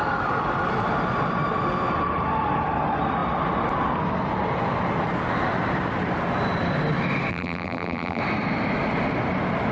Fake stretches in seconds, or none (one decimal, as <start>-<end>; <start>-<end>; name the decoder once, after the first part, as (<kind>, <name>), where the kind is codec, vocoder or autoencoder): 7.3-8.2 (vocoder, BigVGAN v2)